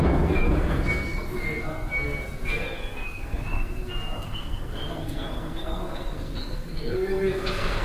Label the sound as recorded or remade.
remade